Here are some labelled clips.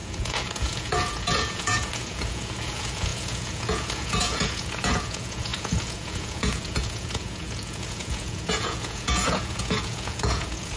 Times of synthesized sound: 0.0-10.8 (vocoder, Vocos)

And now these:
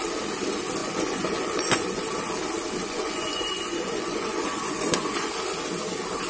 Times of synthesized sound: 0.8-2.0 (vocoder, Vocos); 2.8-5.3